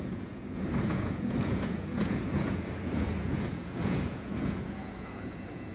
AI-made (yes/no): yes